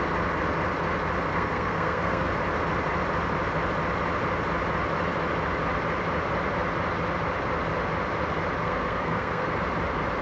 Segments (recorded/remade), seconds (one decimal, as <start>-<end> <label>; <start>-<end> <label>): 0.0-1.3 recorded; 1.3-2.3 remade; 2.3-8.6 recorded; 8.6-9.5 remade; 9.5-10.2 recorded